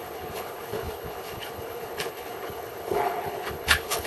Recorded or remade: remade